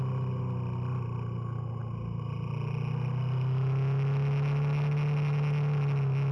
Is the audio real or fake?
real